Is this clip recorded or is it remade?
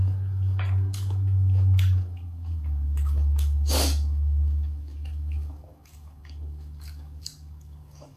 remade